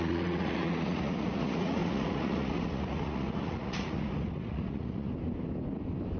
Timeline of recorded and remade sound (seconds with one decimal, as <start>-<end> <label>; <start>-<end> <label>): 0.0-5.1 remade; 5.1-6.2 recorded